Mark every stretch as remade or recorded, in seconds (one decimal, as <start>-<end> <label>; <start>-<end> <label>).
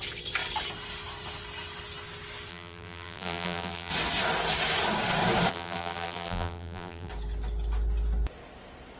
0.0-2.5 recorded; 2.5-3.9 remade; 3.9-5.5 recorded; 5.5-7.1 remade; 7.1-9.0 recorded